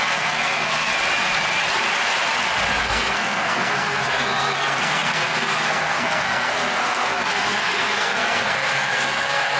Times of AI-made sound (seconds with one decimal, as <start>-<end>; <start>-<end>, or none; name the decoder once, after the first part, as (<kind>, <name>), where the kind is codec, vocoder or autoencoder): 0.0-0.9 (codec, SNAC); 2.8-9.6